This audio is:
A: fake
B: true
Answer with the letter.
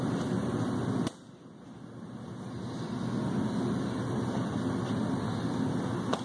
B